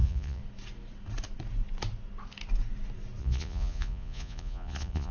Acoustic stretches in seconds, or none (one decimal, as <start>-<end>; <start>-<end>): 0.4-3.2